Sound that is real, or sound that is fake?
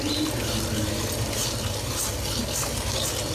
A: real